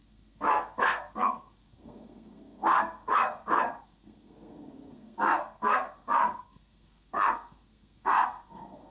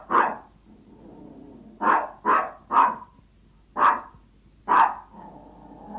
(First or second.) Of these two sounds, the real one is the second